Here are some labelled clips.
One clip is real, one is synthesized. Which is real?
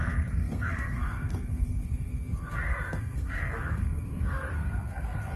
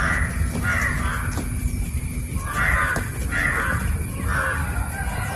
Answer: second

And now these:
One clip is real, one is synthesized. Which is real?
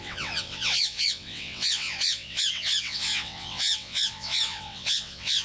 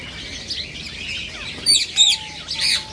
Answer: second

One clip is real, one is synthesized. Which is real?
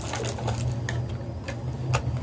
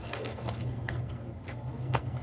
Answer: first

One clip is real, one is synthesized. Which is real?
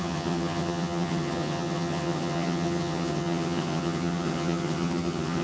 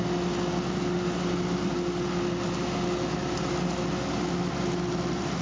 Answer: second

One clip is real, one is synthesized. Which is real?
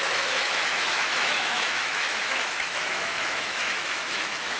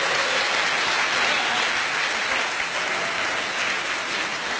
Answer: second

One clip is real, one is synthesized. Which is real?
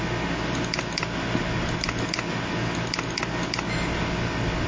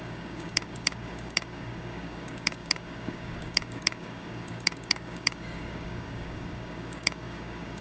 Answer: first